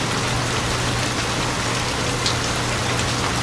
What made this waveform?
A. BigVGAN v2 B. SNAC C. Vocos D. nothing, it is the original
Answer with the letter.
D